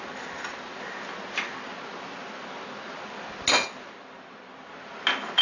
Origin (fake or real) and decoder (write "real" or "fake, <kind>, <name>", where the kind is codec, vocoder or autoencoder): real